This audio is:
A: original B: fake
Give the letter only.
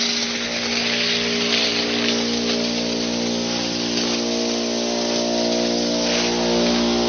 A